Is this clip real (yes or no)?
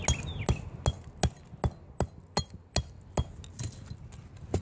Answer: yes